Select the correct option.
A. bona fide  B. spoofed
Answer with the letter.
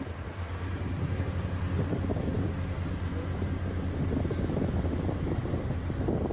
A